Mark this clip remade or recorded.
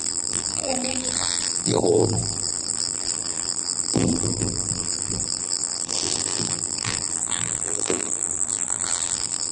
remade